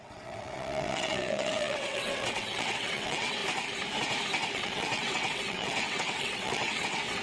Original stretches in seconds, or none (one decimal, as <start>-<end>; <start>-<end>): 3.4-4.5